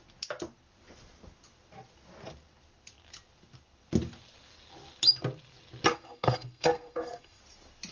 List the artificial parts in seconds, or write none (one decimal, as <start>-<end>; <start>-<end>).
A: 5.9-7.4